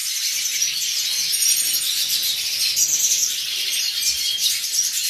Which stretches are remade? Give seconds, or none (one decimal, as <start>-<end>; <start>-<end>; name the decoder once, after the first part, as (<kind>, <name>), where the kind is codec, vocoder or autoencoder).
3.1-5.1 (vocoder, BigVGAN v2)